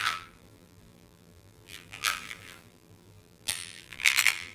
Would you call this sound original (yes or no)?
no